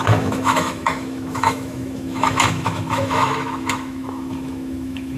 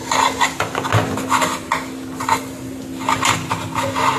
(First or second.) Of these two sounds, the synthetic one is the first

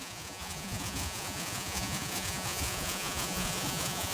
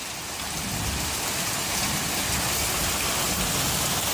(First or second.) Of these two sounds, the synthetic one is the first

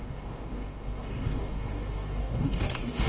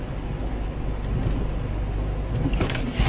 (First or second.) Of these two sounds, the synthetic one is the first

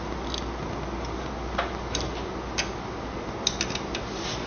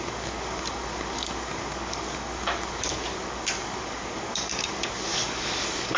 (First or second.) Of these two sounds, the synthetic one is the second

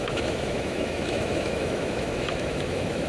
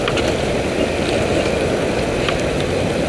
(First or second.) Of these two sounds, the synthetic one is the first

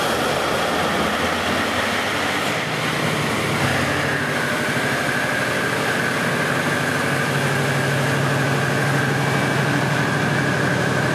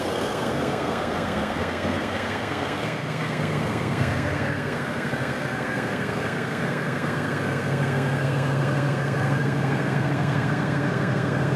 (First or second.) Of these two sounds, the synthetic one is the second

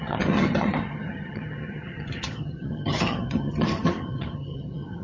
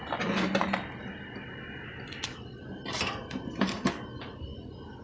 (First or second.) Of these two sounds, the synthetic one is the first